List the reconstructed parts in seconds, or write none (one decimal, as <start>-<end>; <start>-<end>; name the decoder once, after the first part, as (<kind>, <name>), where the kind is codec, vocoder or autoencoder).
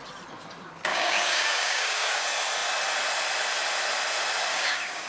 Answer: 0.9-2.2 (codec, DAC); 4.5-5.1